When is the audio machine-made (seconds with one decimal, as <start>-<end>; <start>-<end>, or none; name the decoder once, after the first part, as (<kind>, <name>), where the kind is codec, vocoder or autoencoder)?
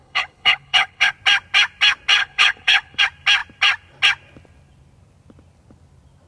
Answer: 0.0-1.1 (codec, HILCodec); 2.2-3.0